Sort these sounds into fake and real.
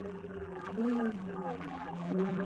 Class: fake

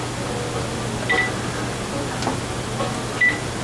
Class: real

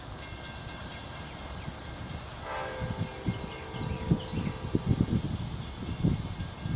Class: real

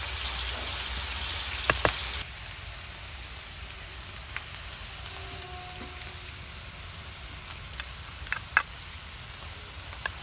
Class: real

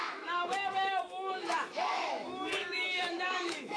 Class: fake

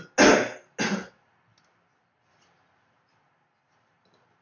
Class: real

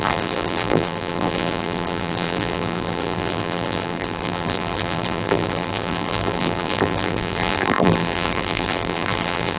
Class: fake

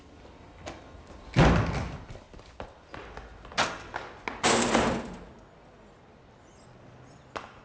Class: real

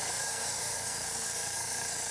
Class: fake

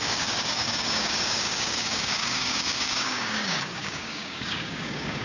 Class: fake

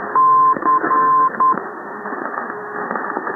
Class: fake